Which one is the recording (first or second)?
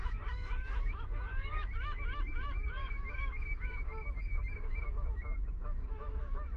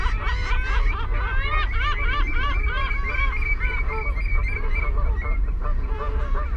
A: second